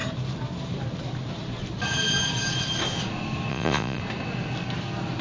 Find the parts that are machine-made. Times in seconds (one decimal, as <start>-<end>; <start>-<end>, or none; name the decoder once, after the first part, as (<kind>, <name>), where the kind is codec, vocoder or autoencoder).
3.5-4.0 (vocoder, Vocos)